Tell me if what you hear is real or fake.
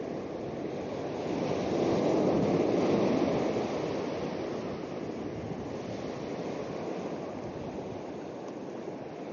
real